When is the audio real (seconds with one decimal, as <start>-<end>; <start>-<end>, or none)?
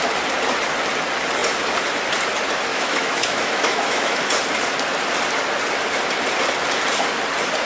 0.0-2.7; 4.3-7.7